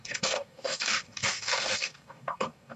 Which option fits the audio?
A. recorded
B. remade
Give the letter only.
B